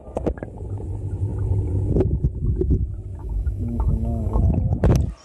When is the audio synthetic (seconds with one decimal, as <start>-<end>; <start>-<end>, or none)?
3.2-4.4